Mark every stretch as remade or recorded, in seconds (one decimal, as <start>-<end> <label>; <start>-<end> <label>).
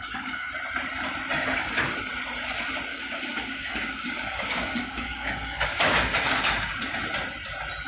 0.0-0.5 remade; 0.5-2.9 recorded; 2.9-6.7 remade; 6.7-7.9 recorded